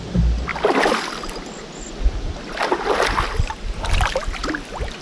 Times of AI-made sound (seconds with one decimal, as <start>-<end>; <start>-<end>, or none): none